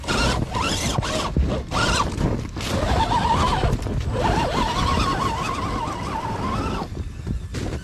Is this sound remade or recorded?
recorded